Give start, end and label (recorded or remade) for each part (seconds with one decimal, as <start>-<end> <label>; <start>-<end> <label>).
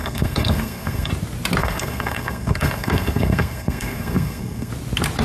0.0-1.1 remade; 1.1-1.6 recorded; 1.6-4.7 remade; 4.7-5.2 recorded